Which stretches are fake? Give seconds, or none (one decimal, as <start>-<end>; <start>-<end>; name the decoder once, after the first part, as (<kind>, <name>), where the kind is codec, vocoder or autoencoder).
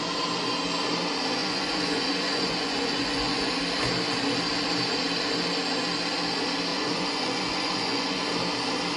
1.4-3.5 (vocoder, Vocos); 6.7-8.2